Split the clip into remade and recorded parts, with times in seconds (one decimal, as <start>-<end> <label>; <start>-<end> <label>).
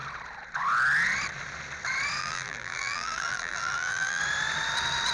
0.0-2.2 recorded; 2.2-4.2 remade; 4.2-5.1 recorded